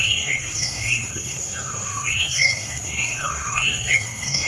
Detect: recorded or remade remade